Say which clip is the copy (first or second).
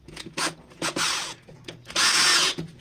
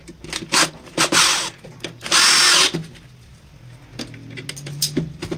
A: first